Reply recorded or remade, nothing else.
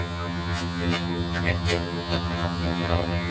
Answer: remade